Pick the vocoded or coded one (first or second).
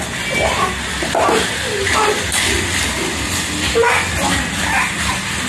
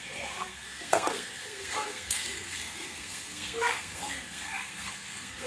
second